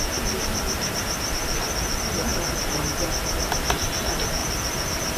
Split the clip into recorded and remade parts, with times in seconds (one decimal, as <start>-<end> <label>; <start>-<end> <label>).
0.0-0.4 recorded; 0.4-1.0 remade; 1.0-4.4 recorded; 4.4-5.2 remade